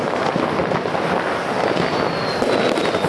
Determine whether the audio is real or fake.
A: real